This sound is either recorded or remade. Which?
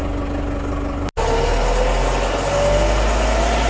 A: recorded